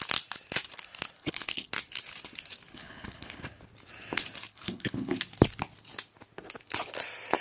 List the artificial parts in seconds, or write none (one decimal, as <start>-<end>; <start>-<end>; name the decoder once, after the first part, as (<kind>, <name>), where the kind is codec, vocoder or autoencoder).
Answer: 1.2-1.7 (codec, HILCodec); 2.7-3.4; 4.5-5.2